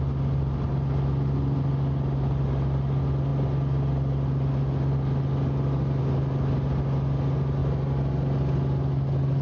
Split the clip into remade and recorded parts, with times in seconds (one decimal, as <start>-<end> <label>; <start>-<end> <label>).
0.0-9.4 recorded